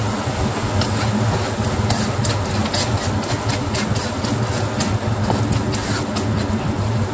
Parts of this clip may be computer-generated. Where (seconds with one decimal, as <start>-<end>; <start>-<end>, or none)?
none